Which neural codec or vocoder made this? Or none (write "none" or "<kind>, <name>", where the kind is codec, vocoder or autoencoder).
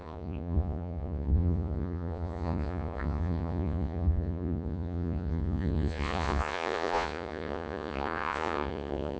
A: vocoder, Vocos